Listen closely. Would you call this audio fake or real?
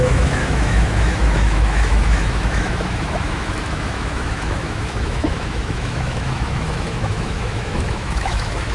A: fake